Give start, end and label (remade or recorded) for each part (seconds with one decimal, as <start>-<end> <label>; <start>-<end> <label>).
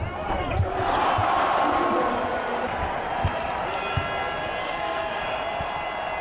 0.0-4.6 recorded; 4.6-5.2 remade; 5.2-6.2 recorded